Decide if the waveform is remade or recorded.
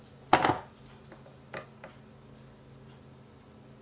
recorded